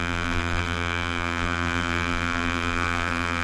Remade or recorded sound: remade